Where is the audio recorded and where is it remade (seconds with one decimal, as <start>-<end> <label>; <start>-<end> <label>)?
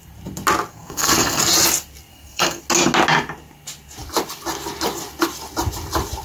0.0-0.7 recorded; 0.7-1.4 remade; 1.4-2.1 recorded; 2.1-2.6 remade; 2.6-6.2 recorded